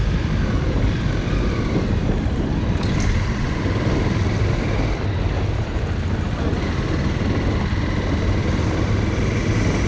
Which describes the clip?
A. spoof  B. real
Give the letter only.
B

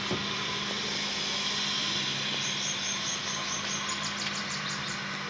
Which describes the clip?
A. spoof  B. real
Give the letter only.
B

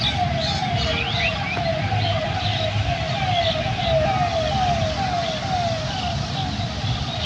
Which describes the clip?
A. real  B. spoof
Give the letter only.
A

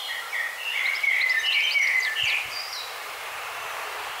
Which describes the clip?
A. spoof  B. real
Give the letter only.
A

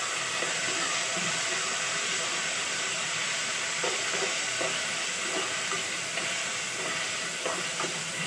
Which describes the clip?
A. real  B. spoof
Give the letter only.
A